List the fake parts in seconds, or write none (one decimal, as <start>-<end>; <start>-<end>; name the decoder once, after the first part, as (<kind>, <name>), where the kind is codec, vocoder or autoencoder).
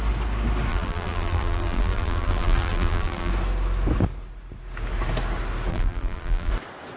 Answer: 0.7-3.3 (vocoder, BigVGAN v2); 5.7-6.5